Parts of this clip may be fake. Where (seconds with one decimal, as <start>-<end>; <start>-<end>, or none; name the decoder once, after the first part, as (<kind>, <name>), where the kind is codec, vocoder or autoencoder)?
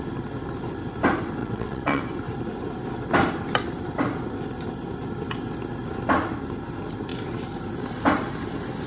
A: 1.4-2.0 (vocoder, WaveNeXt)